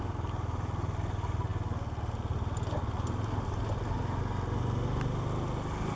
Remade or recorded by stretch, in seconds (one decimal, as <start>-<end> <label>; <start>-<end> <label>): 0.0-5.9 recorded